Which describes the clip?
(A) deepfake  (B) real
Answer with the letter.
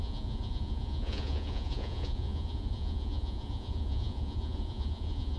A